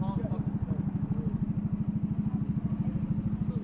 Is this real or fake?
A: real